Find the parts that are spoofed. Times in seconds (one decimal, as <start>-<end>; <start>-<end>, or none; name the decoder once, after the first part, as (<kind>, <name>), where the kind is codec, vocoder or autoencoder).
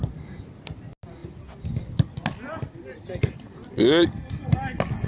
none